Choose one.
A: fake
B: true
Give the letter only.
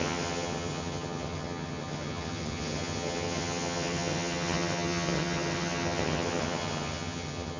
A